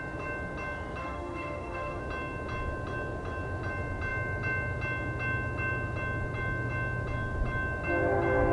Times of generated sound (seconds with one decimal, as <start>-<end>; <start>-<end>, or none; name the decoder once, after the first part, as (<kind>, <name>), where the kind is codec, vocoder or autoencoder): 1.0-2.0 (autoencoder, DAC-VAE)